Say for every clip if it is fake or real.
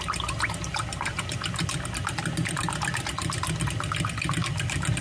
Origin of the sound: real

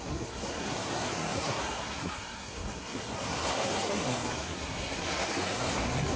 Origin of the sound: fake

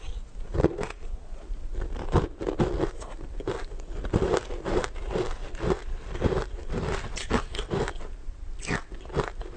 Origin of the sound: real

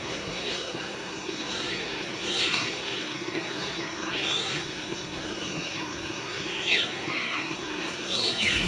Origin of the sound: fake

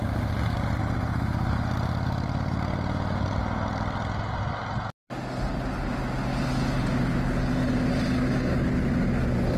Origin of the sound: real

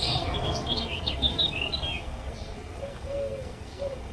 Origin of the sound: fake